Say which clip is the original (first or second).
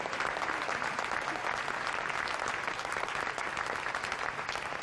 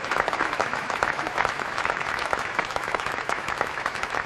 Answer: first